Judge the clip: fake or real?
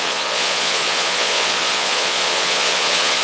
fake